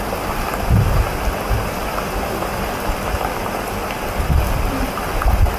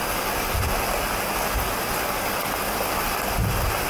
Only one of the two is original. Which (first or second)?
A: second